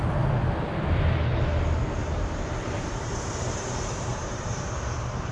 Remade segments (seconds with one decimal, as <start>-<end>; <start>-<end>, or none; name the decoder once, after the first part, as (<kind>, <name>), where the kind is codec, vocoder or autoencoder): 2.0-5.3 (vocoder, BigVGAN v2)